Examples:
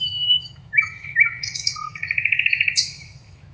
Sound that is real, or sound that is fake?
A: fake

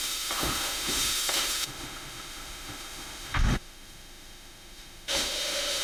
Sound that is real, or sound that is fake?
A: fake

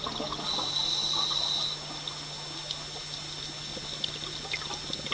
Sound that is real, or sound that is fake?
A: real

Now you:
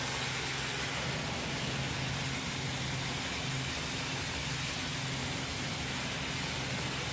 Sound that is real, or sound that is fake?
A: real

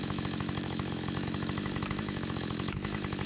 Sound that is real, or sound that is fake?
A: fake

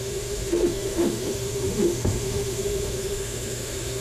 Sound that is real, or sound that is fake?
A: fake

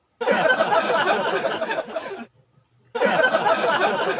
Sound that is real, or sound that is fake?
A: real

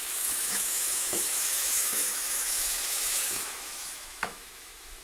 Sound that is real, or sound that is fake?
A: fake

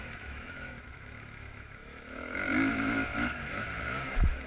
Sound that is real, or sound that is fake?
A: fake